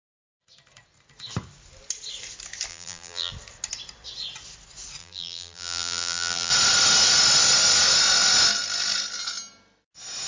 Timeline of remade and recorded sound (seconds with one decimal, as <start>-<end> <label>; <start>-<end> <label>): 0.0-2.7 recorded; 2.7-3.3 remade; 3.3-5.0 recorded; 5.0-6.5 remade; 6.5-10.3 recorded